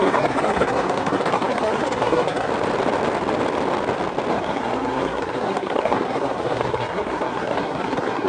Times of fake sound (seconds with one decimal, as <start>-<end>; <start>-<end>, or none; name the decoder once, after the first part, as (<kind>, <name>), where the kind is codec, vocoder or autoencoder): 0.0-2.5 (codec, SNAC); 4.3-8.3